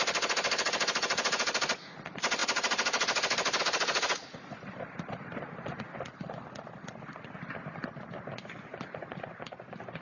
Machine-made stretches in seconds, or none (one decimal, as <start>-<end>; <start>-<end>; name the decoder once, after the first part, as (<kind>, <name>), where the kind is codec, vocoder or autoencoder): none

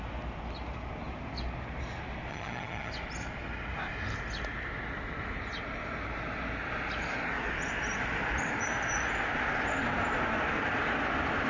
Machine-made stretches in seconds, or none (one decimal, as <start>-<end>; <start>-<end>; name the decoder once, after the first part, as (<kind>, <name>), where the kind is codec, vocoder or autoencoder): 2.3-2.9 (vocoder, HiFi-GAN)

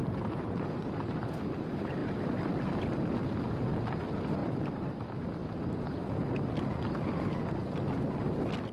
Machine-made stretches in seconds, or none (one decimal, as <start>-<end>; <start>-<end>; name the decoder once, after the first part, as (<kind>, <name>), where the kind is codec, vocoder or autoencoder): 0.0-1.4 (vocoder, BigVGAN v2); 4.4-5.0; 5.4-6.0

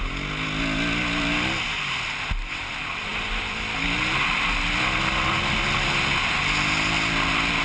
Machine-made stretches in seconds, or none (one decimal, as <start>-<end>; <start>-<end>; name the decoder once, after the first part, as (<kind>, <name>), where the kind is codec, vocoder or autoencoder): none

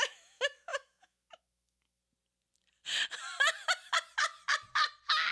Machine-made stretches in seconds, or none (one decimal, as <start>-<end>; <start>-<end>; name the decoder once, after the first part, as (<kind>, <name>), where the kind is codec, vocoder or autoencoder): 0.0-2.0 (autoencoder, DAC-VAE)

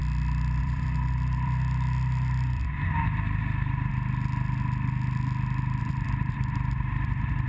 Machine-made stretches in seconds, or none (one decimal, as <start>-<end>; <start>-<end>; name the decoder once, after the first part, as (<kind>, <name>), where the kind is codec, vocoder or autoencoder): 0.6-3.9 (vocoder, BigVGAN v2); 5.8-7.5

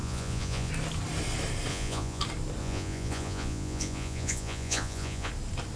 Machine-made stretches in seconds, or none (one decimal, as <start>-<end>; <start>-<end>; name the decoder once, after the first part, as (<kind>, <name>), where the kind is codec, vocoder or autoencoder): 0.0-0.7 (vocoder, Vocos); 1.7-2.2; 2.6-5.3

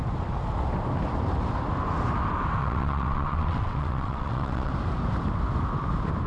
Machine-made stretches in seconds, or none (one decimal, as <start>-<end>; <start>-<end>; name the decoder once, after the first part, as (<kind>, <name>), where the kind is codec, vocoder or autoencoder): 2.6-4.7 (vocoder, WaveNeXt)